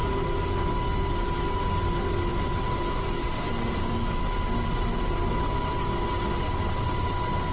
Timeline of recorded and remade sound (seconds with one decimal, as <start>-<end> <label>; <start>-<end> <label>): 0.0-7.5 recorded